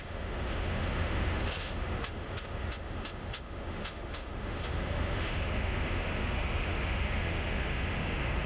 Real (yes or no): no